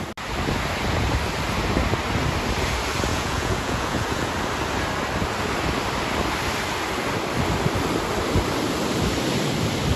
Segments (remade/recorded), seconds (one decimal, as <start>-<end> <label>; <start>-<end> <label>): 0.0-3.1 recorded; 3.1-4.3 remade; 4.3-10.0 recorded